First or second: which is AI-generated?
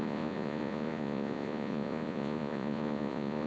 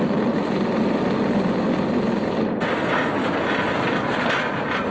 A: first